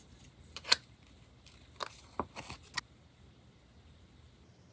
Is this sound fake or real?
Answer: real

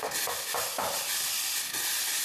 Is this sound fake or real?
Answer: real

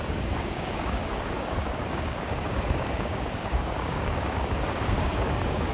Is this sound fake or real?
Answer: fake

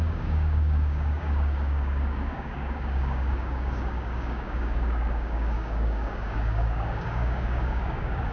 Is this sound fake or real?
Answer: fake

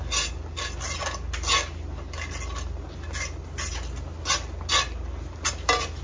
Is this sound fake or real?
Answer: real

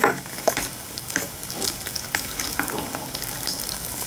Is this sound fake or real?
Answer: fake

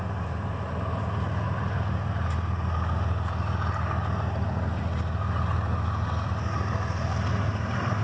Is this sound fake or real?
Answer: real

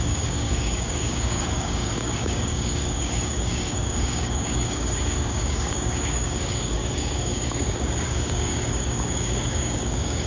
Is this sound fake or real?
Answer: fake